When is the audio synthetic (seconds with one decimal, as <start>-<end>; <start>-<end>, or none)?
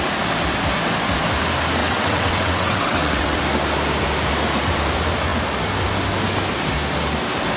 1.8-3.4